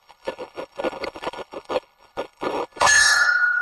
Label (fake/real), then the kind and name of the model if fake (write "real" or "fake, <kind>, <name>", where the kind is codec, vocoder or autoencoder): fake, codec, HILCodec